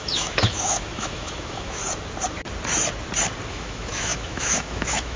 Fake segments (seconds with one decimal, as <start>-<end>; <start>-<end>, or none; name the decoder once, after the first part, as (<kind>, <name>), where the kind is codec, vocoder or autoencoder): 0.0-1.8 (autoencoder, DAC-VAE); 3.5-5.2